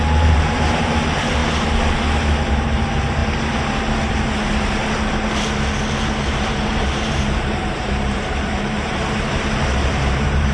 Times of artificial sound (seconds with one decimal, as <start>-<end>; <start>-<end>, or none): 0.0-1.4; 2.5-3.2; 4.1-4.8; 6.2-10.5